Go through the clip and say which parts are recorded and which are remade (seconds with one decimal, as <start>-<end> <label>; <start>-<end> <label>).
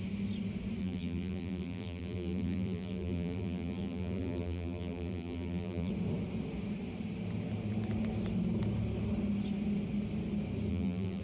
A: 0.0-0.8 recorded; 0.8-5.9 remade; 5.9-10.7 recorded; 10.7-11.2 remade